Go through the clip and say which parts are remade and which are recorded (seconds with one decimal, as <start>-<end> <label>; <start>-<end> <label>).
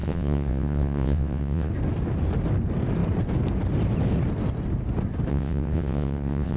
0.0-1.7 remade; 1.7-5.3 recorded; 5.3-6.6 remade